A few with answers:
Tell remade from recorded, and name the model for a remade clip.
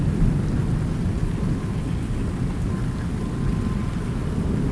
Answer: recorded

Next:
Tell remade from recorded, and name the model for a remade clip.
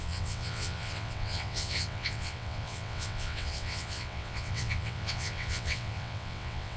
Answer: remade, vocoder, WaveNeXt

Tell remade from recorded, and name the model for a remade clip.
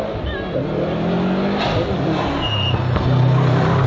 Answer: recorded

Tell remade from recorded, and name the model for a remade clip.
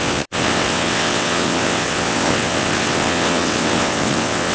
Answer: remade, vocoder, WaveNeXt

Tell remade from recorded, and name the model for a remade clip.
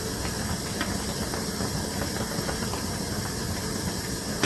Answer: recorded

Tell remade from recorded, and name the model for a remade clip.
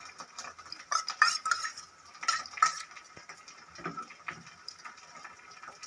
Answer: recorded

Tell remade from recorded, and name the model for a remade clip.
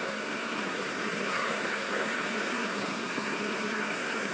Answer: remade, codec, SNAC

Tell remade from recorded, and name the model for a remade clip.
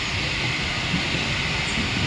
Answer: recorded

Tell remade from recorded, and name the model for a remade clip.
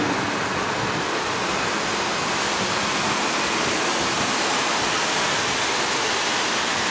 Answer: recorded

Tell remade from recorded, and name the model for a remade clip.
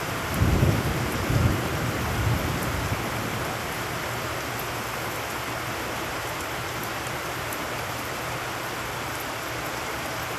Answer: recorded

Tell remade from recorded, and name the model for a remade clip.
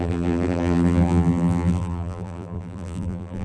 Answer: remade, vocoder, BigVGAN v2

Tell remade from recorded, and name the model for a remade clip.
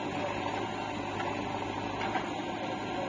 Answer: recorded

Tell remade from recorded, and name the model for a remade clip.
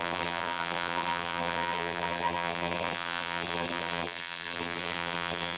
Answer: remade, vocoder, BigVGAN v2